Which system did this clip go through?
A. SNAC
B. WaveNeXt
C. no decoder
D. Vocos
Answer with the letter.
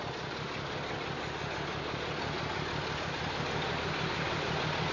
C